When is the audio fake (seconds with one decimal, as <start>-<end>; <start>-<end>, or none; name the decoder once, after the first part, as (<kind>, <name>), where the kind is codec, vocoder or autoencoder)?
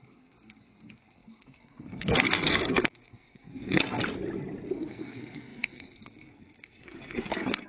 0.0-4.0 (codec, SNAC); 4.7-7.7